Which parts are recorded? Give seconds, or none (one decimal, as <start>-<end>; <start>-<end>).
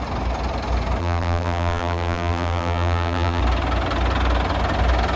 0.0-1.0; 3.4-5.2